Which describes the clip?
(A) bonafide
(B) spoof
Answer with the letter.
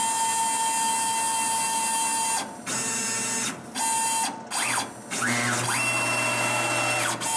A